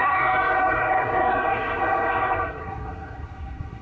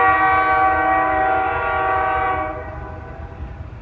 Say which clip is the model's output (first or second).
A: first